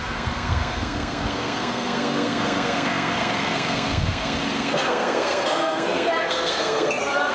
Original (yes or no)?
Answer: no